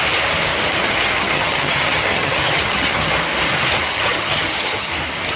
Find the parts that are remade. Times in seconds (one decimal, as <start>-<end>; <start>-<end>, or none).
0.8-3.1; 3.9-4.9